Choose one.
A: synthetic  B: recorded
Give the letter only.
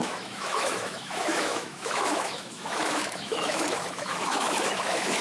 A